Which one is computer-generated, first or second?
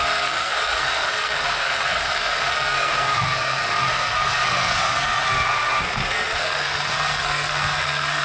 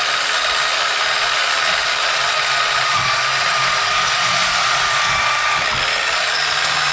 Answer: first